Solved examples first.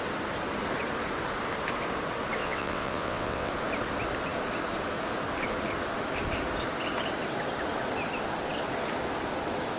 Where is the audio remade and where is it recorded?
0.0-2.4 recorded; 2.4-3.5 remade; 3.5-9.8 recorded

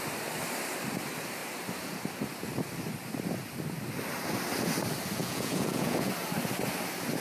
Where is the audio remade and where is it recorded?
0.0-5.2 recorded; 5.2-6.1 remade; 6.1-7.2 recorded

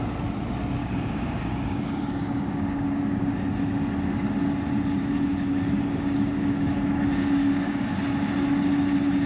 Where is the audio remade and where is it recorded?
0.0-0.8 recorded; 0.8-3.3 remade; 3.3-5.0 recorded; 5.0-8.0 remade; 8.0-9.3 recorded

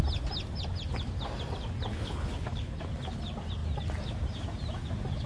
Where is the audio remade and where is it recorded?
0.0-1.9 recorded; 1.9-2.8 remade; 2.8-5.3 recorded

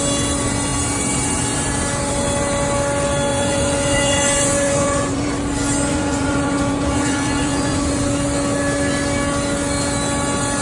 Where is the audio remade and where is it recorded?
0.0-3.3 recorded; 3.3-5.3 remade; 5.3-5.9 recorded; 5.9-8.0 remade; 8.0-10.6 recorded